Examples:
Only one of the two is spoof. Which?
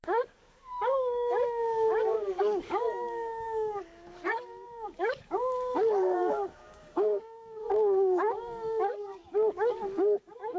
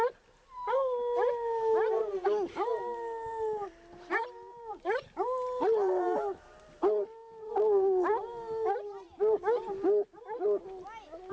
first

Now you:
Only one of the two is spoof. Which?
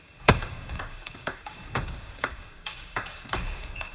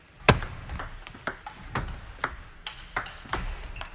first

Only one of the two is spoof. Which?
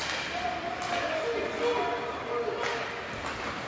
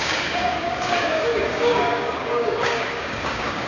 second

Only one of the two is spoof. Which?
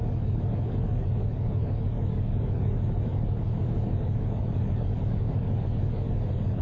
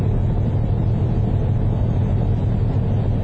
first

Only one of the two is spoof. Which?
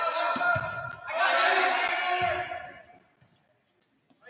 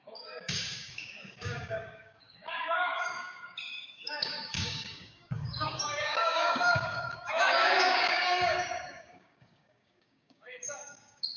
second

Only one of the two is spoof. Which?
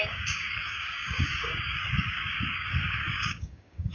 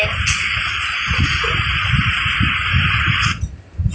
first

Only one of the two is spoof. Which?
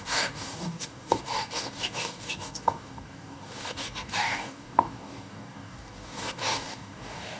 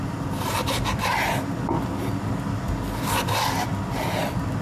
first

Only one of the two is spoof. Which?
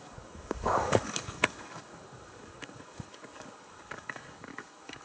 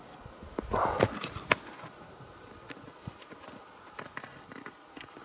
first